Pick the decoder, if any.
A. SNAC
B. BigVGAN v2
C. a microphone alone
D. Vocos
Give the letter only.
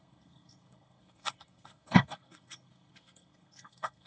A